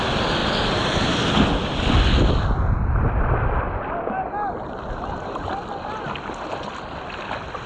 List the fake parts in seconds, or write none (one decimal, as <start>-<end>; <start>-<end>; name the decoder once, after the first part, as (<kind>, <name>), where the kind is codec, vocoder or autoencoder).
none

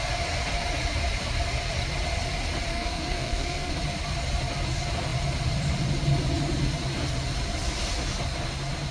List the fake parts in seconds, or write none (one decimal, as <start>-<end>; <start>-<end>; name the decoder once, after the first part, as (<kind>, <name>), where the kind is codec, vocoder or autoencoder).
2.7-3.7 (codec, SNAC)

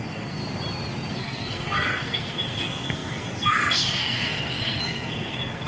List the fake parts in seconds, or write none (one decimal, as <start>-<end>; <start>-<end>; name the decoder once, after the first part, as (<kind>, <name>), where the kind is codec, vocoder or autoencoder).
0.0-0.4 (codec, SNAC); 1.1-5.7

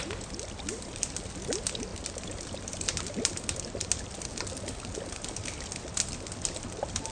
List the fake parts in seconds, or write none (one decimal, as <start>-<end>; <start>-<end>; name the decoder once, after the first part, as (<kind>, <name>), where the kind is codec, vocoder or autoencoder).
none

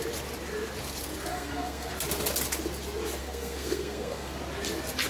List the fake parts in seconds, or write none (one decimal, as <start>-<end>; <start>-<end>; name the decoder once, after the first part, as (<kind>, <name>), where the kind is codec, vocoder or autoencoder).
1.3-1.9 (codec, SNAC); 3.2-4.4

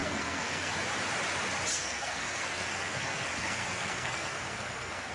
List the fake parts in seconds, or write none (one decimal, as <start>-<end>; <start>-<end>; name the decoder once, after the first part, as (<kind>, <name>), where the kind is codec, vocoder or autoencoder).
0.0-0.7 (codec, SNAC); 1.7-5.1

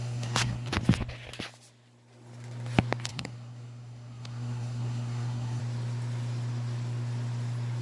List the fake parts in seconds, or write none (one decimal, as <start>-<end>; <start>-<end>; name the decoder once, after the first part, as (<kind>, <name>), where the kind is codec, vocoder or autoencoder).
0.0-0.7 (codec, SNAC); 3.1-5.6

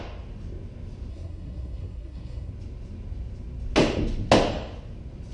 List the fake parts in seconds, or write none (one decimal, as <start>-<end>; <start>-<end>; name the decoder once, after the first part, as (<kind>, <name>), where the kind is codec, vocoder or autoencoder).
1.1-2.5 (codec, SNAC)